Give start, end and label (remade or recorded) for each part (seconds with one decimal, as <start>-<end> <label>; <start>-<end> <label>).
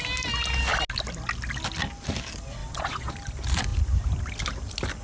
0.0-2.6 recorded; 2.6-3.1 remade; 3.1-5.0 recorded